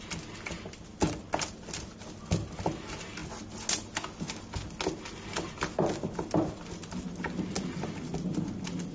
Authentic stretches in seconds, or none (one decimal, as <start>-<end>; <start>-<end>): 0.0-8.9